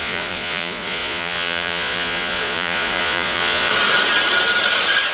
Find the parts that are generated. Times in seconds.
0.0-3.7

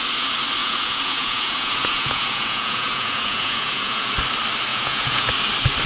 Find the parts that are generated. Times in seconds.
0.6-4.1; 4.7-5.3

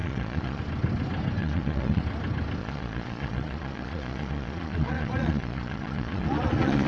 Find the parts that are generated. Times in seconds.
0.0-0.6; 1.4-2.0; 2.6-6.9

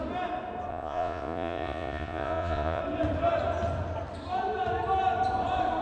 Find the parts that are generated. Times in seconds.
0.7-2.8

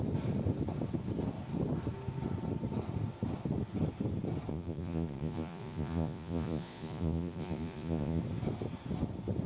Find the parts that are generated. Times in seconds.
4.5-8.2

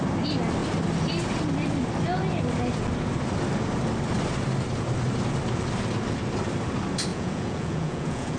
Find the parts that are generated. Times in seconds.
7.1-8.4

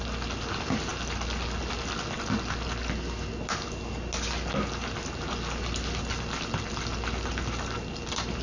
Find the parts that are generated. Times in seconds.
none